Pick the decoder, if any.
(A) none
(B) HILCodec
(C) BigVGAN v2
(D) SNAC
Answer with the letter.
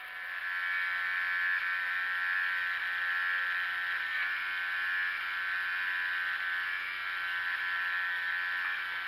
A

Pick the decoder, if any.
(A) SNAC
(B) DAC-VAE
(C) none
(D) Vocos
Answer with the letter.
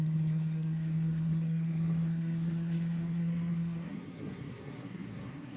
A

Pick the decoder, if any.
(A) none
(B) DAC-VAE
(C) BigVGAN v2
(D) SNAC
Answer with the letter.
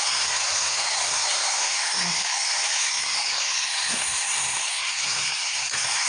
D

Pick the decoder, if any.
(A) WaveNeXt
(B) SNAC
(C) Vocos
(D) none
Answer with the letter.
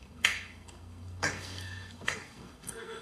B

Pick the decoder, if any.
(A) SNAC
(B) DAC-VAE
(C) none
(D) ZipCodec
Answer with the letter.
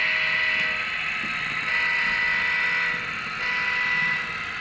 C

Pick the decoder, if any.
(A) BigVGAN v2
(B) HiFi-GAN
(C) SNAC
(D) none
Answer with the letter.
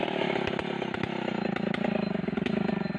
D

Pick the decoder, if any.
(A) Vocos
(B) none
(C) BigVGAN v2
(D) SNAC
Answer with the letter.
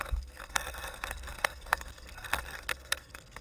D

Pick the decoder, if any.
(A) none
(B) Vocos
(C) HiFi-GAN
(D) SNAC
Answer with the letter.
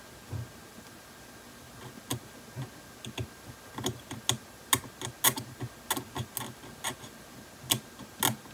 A